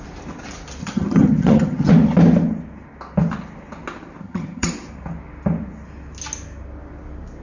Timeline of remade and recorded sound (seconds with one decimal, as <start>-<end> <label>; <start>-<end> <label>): 0.0-0.8 recorded; 0.8-1.9 remade; 1.9-4.2 recorded; 4.2-4.7 remade; 4.7-7.4 recorded